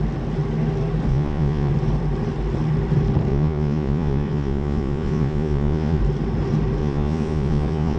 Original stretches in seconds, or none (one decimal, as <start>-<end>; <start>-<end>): 0.0-1.1; 1.7-3.3; 6.0-6.8